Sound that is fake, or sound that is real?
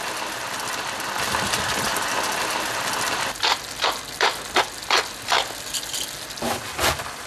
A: real